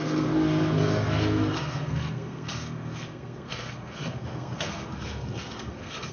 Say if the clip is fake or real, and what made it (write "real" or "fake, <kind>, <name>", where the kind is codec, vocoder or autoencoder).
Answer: fake, codec, SNAC